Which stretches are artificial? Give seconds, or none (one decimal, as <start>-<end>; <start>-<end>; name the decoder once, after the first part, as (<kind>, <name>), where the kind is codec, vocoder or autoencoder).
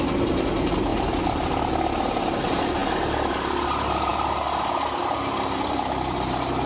none